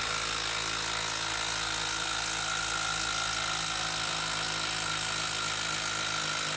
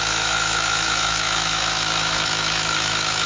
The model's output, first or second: second